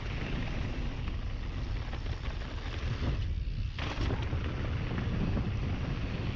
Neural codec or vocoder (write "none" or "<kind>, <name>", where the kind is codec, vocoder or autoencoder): none